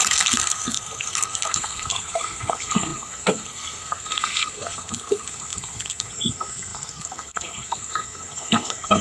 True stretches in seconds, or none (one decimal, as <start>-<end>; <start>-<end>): none